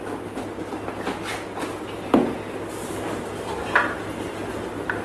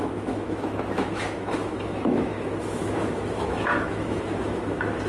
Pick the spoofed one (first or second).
second